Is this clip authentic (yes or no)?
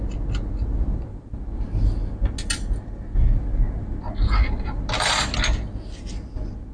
yes